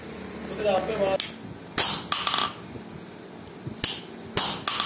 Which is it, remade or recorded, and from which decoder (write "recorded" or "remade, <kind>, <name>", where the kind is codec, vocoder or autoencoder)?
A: recorded